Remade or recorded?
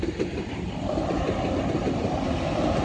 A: recorded